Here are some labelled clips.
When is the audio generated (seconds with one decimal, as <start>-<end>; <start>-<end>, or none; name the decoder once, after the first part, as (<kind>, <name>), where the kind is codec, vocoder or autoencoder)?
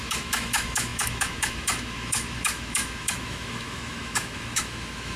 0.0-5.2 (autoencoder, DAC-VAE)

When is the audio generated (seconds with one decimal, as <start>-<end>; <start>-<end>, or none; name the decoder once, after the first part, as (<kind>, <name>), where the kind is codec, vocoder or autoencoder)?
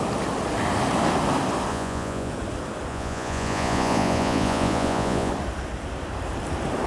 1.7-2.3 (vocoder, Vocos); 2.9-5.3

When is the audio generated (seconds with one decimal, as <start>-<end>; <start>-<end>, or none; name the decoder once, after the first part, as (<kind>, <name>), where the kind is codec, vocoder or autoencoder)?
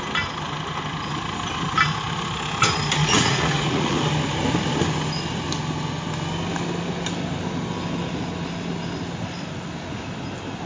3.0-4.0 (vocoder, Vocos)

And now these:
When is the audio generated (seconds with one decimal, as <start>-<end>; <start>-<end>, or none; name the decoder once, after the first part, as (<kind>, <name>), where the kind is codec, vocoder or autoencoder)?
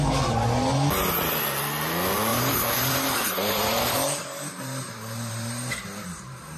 2.3-6.6 (vocoder, BigVGAN v2)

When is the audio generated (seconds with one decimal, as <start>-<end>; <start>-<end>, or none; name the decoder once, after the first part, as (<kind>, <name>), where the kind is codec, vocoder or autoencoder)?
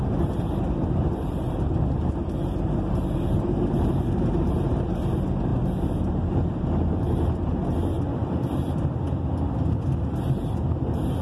0.0-5.5 (vocoder, BigVGAN v2); 6.2-7.6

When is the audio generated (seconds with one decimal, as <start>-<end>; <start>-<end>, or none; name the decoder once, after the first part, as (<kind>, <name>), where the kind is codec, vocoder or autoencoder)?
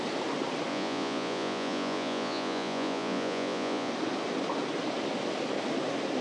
0.7-3.9 (vocoder, Vocos)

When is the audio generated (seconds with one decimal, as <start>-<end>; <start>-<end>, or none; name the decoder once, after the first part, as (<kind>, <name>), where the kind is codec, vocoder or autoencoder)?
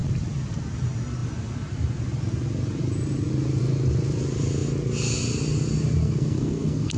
6.0-7.0 (codec, SNAC)